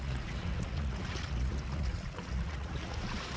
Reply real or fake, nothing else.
fake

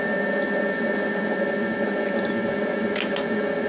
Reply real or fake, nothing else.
real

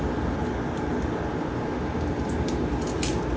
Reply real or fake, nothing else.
real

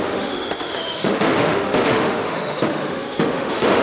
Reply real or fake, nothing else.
fake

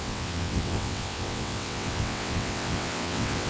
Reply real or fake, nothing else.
fake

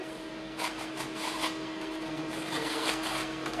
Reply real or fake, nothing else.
fake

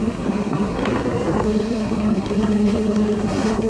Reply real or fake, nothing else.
fake